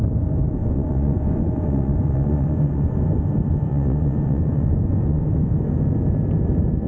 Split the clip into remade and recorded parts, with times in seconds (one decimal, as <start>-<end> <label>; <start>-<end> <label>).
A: 0.0-0.6 recorded; 0.6-3.0 remade; 3.0-3.7 recorded; 3.7-5.2 remade; 5.2-6.9 recorded